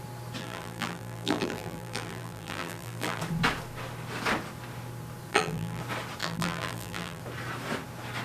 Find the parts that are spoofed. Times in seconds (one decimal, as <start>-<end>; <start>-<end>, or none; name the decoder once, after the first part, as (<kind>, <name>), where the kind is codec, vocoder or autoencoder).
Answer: 0.4-3.2 (vocoder, BigVGAN v2); 5.3-5.8; 6.2-7.2